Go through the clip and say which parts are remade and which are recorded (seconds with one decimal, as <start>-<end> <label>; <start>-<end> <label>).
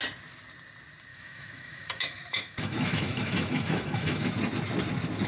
0.0-1.1 recorded; 1.1-4.3 remade; 4.3-5.3 recorded